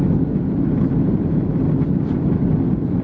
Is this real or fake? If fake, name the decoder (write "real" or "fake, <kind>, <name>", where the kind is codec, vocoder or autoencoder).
real